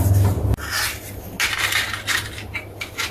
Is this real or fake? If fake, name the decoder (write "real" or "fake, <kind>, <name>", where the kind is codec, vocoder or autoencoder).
real